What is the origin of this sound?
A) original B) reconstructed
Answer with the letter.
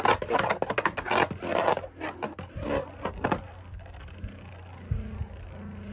A